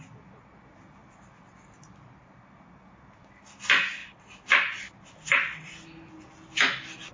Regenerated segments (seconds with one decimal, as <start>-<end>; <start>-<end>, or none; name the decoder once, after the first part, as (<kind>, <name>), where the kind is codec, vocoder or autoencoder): none